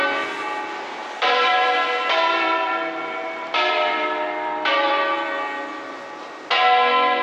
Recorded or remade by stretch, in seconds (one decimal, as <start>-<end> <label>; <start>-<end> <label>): 0.0-1.0 recorded; 1.0-5.0 remade; 5.0-7.2 recorded